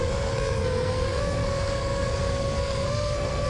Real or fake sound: fake